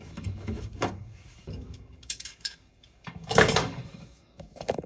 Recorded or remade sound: remade